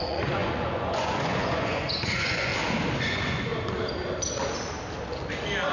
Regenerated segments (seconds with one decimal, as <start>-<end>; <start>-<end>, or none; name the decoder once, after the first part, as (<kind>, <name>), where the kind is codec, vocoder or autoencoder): 0.0-2.5 (vocoder, Vocos); 3.1-3.5

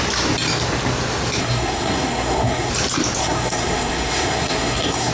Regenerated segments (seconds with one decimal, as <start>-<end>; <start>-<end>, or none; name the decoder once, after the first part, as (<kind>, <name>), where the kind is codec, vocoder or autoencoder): 1.4-2.7 (codec, SNAC); 3.2-5.1

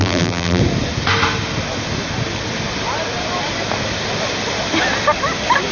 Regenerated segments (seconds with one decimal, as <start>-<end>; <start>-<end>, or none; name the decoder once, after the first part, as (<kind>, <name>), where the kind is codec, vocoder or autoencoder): 0.0-0.6 (vocoder, BigVGAN v2)

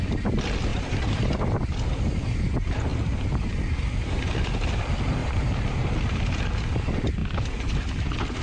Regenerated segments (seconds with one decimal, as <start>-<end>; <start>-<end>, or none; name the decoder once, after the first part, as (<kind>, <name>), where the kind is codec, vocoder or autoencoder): 0.7-1.7 (vocoder, BigVGAN v2); 2.9-4.2; 5.2-6.2

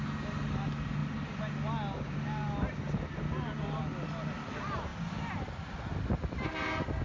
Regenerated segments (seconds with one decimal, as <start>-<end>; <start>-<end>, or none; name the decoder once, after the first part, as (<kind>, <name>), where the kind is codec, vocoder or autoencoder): none